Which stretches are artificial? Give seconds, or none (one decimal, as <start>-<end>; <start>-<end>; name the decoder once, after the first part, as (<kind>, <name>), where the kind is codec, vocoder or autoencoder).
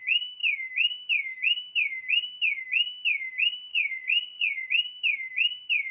3.7-4.7 (vocoder, Vocos)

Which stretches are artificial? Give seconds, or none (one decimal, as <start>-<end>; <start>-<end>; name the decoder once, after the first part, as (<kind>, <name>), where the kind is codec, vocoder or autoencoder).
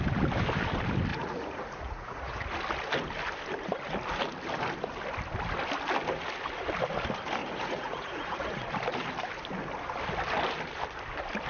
1.1-2.4 (vocoder, Vocos); 7.4-8.7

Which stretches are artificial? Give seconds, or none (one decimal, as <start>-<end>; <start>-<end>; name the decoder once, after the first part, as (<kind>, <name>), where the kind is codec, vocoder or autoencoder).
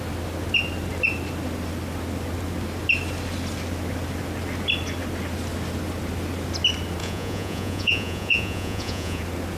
7.0-9.2 (vocoder, Vocos)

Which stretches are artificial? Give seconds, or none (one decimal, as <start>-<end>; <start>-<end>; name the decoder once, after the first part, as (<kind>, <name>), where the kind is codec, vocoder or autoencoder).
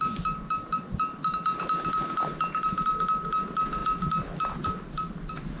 none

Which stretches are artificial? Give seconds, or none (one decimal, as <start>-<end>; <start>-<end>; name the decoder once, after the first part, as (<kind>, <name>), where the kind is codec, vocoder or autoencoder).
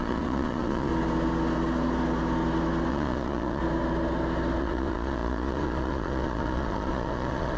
0.0-0.9 (vocoder, Vocos); 2.9-3.6; 4.6-7.6